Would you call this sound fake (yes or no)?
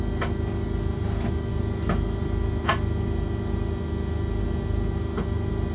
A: no